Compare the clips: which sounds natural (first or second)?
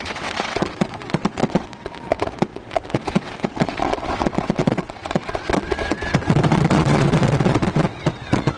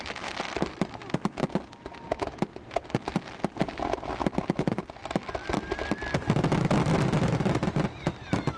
second